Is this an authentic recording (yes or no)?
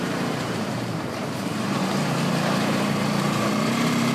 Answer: no